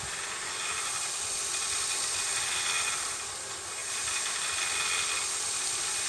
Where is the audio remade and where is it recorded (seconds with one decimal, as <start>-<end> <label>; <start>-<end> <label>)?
0.0-3.8 recorded; 3.8-4.5 remade; 4.5-6.1 recorded